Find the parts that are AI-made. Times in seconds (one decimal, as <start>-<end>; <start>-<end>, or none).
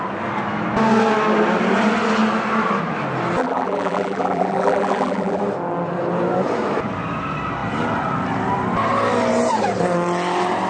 3.4-5.4